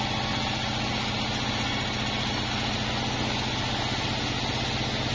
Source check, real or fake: real